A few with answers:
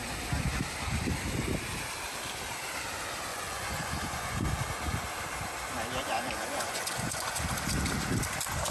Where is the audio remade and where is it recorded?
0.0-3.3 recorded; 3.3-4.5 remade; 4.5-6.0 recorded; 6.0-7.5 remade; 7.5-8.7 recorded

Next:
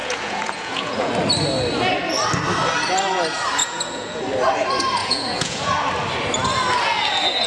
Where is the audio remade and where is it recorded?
0.0-1.1 remade; 1.1-3.6 recorded; 3.6-4.2 remade; 4.2-5.0 recorded; 5.0-5.7 remade; 5.7-7.5 recorded

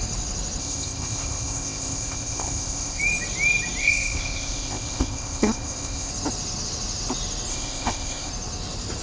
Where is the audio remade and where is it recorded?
0.0-0.6 recorded; 0.6-3.0 remade; 3.0-3.8 recorded; 3.8-6.1 remade; 6.1-7.5 recorded; 7.5-8.3 remade; 8.3-9.0 recorded

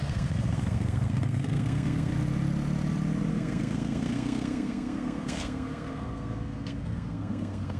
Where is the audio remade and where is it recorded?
0.0-2.1 remade; 2.1-3.3 recorded; 3.3-7.8 remade